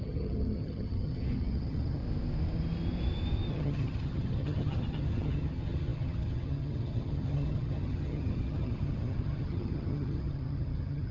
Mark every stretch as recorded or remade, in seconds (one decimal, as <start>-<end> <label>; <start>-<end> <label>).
0.0-2.0 remade; 2.0-3.5 recorded; 3.5-11.1 remade